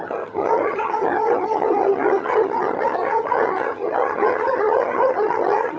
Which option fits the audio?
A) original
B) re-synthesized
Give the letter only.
B